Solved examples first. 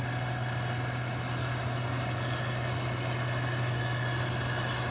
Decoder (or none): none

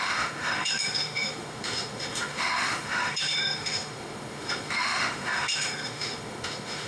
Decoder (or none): autoencoder, DAC-VAE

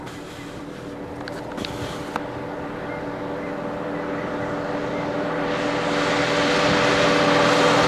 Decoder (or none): none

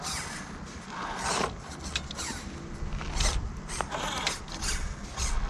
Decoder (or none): none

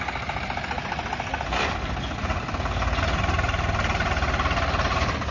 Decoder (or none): none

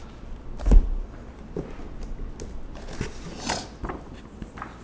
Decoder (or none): none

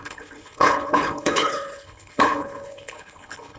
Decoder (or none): codec, HILCodec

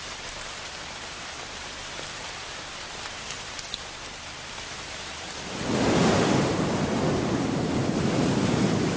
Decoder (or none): vocoder, BigVGAN v2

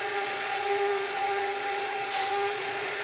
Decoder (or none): vocoder, Vocos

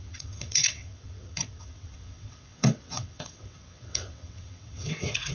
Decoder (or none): vocoder, WaveNeXt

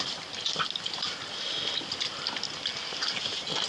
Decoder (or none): none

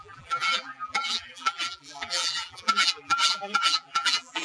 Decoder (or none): vocoder, BigVGAN v2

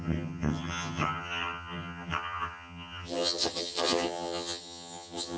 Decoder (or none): vocoder, HiFi-GAN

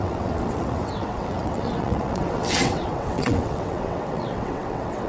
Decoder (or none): vocoder, WaveNeXt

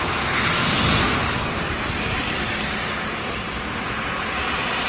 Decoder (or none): none